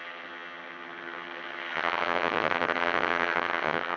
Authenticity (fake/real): fake